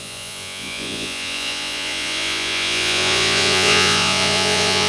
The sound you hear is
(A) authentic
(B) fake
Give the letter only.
B